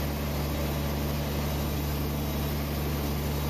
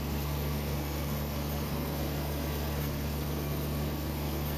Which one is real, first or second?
first